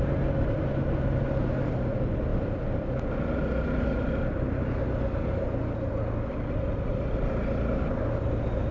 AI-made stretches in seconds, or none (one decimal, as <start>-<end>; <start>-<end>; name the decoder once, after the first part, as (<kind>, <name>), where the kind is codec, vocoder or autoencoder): none